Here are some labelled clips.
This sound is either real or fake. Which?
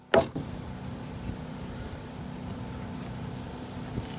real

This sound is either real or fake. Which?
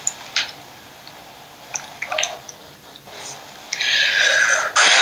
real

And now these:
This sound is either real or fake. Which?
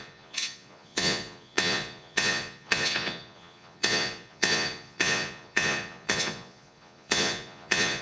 fake